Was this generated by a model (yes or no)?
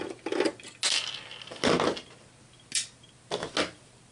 no